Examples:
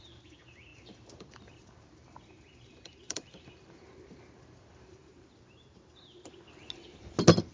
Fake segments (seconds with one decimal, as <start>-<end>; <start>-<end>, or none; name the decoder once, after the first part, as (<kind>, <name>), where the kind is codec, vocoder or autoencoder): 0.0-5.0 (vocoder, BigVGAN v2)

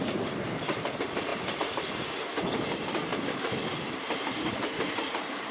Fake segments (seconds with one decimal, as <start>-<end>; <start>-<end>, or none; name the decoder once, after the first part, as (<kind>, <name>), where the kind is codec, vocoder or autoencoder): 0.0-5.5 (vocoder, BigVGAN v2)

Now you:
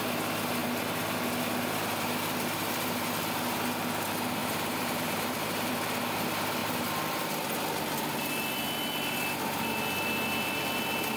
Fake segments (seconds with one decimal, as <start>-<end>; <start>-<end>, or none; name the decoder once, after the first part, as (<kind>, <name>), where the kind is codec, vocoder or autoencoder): 4.4-5.7 (vocoder, BigVGAN v2)